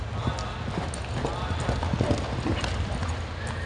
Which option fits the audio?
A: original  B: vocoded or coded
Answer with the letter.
A